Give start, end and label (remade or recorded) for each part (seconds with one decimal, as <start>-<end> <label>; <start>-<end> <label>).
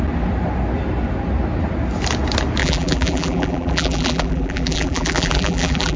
0.0-2.6 recorded; 2.6-6.0 remade